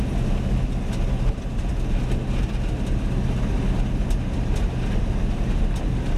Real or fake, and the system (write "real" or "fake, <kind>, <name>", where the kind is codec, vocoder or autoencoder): real